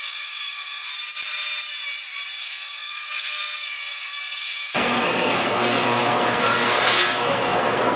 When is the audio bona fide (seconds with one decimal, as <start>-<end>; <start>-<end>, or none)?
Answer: 0.9-2.4